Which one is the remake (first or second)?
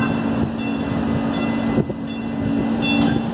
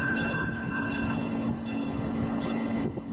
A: second